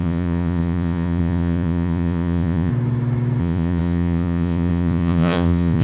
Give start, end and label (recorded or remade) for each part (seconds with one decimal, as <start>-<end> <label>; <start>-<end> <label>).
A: 0.0-2.7 remade; 2.7-3.4 recorded; 3.4-5.8 remade

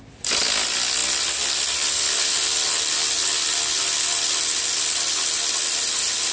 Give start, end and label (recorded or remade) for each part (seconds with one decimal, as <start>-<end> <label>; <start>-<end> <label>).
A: 0.0-1.0 recorded; 1.0-4.8 remade; 4.8-6.3 recorded

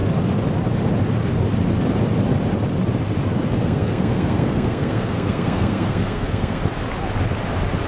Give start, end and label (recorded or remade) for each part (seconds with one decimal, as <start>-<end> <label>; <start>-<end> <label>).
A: 0.0-3.6 recorded; 3.6-6.6 remade; 6.6-7.9 recorded

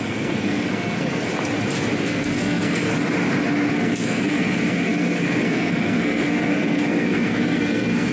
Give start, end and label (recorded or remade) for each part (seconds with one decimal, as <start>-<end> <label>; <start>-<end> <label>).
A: 0.0-1.3 remade; 1.3-2.0 recorded; 2.0-2.9 remade; 2.9-3.7 recorded; 3.7-8.1 remade